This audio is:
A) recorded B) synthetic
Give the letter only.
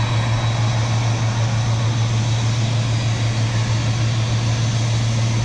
A